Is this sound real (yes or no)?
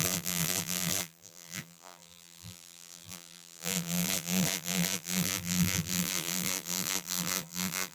no